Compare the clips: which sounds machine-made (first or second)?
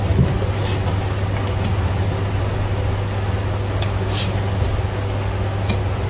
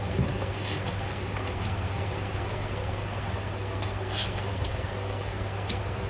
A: second